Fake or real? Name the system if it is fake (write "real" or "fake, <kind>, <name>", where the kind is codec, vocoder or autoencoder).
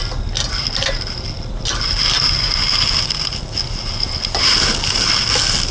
real